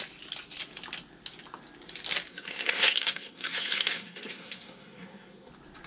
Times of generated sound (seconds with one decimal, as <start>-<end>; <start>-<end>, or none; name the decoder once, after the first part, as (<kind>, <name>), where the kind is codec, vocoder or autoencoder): 2.3-5.5 (codec, SNAC)